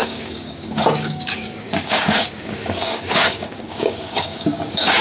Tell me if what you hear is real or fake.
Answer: fake